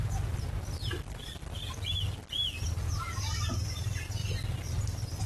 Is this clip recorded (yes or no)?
yes